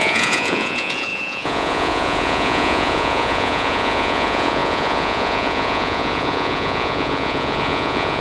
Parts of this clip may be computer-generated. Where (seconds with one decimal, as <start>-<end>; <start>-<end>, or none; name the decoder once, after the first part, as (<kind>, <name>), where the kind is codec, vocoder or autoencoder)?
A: 0.0-8.2 (vocoder, Vocos)